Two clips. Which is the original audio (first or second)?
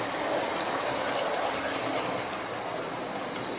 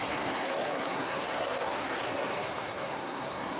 first